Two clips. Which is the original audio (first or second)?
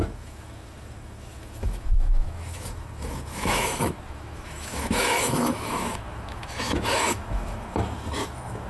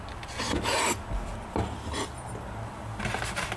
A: second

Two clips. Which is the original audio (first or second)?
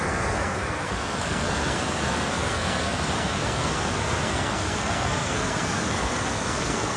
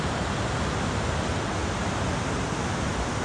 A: second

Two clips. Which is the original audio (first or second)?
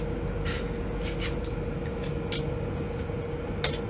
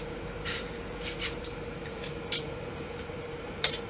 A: first